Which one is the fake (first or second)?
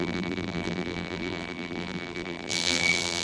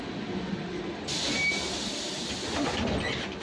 first